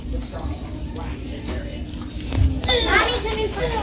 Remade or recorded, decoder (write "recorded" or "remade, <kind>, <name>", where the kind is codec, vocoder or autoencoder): recorded